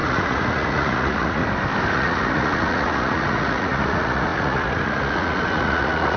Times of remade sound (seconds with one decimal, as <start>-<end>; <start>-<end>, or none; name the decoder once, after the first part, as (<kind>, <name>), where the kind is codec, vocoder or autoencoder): 0.0-1.4 (vocoder, Vocos); 1.9-6.2